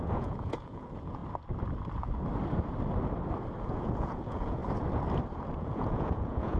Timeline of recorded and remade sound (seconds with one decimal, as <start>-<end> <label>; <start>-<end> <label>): 0.0-1.2 remade; 1.2-3.6 recorded; 3.6-4.6 remade; 4.6-5.6 recorded; 5.6-6.6 remade